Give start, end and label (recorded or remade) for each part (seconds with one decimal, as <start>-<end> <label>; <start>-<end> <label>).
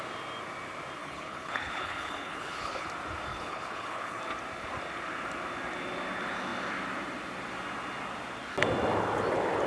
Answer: 0.0-1.0 recorded; 1.0-2.9 remade; 2.9-3.3 recorded; 3.3-4.2 remade; 4.2-9.7 recorded